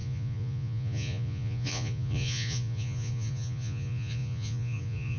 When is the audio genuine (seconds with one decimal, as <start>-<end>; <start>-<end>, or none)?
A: none